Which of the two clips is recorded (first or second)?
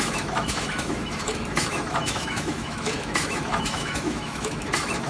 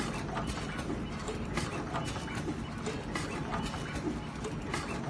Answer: second